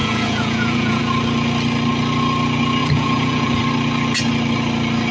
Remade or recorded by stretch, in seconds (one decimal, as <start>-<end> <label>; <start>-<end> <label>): 0.0-1.0 remade; 1.0-2.8 recorded; 2.8-3.6 remade; 3.6-5.1 recorded

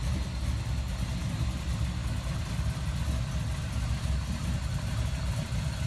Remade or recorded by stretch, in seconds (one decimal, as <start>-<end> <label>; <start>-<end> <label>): 0.0-4.7 recorded; 4.7-5.5 remade; 5.5-5.9 recorded

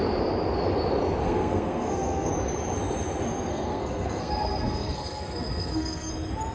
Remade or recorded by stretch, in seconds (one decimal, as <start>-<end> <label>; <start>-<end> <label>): 0.0-1.2 recorded; 1.2-2.3 remade; 2.3-3.5 recorded; 3.5-6.1 remade; 6.1-6.5 recorded

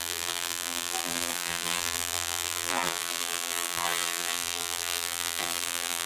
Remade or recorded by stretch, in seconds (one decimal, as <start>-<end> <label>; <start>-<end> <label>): 0.0-6.1 remade

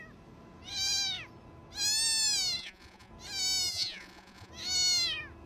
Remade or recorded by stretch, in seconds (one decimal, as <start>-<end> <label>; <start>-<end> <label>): 0.0-2.6 recorded; 2.6-3.1 remade; 3.1-3.7 recorded; 3.7-4.5 remade; 4.5-5.5 recorded

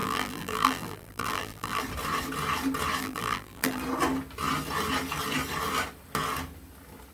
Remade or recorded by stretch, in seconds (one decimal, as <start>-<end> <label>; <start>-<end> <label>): 0.0-1.8 remade; 1.8-3.0 recorded; 3.0-3.8 remade; 3.8-7.1 recorded

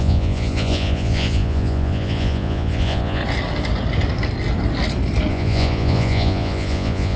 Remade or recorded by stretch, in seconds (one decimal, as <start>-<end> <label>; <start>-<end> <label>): 0.0-3.2 remade; 3.2-5.3 recorded; 5.3-7.2 remade

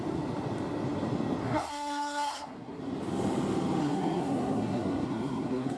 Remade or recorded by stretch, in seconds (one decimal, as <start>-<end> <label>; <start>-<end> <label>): 0.0-1.4 recorded; 1.4-2.8 remade; 2.8-3.8 recorded; 3.8-5.8 remade